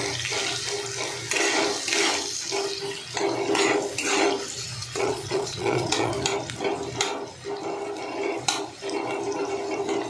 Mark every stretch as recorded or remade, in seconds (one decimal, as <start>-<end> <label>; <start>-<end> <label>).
0.0-4.8 recorded; 4.8-6.1 remade; 6.1-10.1 recorded